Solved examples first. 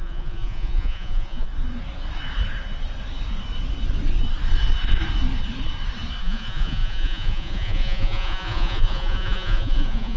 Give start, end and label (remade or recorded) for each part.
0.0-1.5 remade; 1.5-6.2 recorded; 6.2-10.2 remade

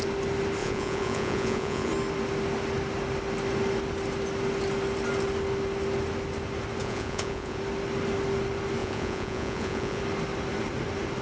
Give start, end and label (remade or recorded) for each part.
0.0-0.6 recorded; 0.6-1.9 remade; 1.9-6.8 recorded; 6.8-7.6 remade; 7.6-8.8 recorded; 8.8-10.0 remade; 10.0-11.2 recorded